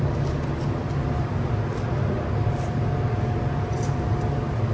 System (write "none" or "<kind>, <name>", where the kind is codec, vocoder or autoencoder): none